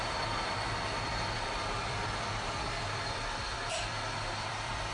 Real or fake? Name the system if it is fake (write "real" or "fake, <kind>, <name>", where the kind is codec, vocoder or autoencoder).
fake, vocoder, BigVGAN v2